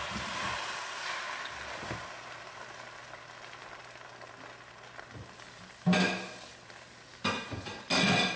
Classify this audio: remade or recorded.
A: recorded